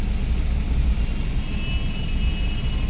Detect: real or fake real